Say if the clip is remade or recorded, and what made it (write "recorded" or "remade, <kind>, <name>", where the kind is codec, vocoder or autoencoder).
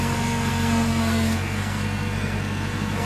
remade, codec, SNAC